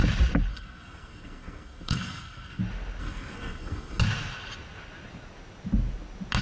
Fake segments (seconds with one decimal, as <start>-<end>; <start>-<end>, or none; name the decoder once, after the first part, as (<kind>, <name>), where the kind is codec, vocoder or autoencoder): 0.5-2.6 (codec, SNAC); 3.0-4.0